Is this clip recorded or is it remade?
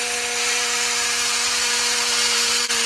remade